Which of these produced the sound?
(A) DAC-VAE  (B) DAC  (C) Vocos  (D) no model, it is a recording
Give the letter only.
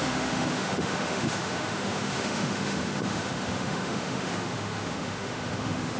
A